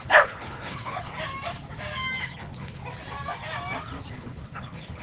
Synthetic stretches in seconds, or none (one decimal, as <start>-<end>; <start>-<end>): 0.0-1.1; 2.2-2.8; 4.1-5.0